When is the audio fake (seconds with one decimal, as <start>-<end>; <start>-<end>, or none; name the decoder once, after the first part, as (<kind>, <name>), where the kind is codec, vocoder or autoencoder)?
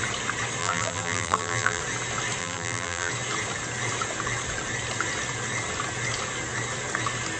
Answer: 0.6-1.8 (vocoder, BigVGAN v2); 2.4-3.1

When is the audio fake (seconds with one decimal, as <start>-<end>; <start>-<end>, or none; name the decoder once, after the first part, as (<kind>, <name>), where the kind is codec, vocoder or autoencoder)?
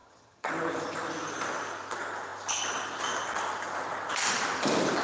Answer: 0.0-0.5 (vocoder, HiFi-GAN)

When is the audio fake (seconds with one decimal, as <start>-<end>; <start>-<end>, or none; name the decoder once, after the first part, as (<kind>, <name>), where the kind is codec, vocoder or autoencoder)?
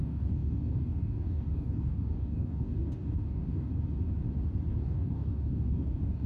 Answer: 0.0-3.7 (codec, DAC); 4.7-6.3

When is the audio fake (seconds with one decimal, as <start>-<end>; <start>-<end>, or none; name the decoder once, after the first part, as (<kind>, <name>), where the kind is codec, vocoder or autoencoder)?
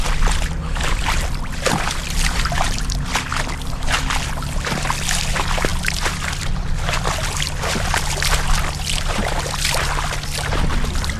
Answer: none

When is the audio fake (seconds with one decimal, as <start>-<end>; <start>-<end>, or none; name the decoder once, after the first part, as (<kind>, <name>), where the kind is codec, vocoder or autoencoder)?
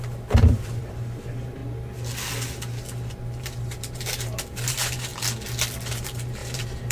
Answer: 0.0-1.6 (vocoder, BigVGAN v2); 3.1-5.1; 5.9-6.9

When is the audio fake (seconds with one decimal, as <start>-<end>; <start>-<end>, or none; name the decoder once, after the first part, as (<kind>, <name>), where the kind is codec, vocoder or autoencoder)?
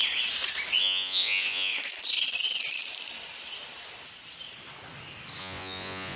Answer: 0.8-1.7 (vocoder, Vocos); 5.4-6.2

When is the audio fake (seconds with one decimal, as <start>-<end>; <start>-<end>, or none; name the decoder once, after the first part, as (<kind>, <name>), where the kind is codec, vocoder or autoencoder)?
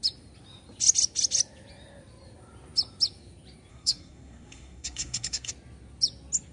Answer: 3.7-5.5 (codec, SNAC)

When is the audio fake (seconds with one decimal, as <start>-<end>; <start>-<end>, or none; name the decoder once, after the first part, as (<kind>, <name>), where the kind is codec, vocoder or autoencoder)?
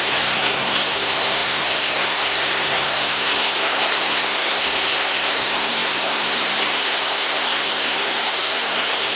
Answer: 0.0-9.2 (codec, SNAC)